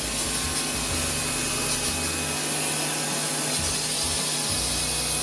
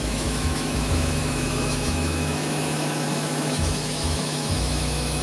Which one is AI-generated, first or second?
second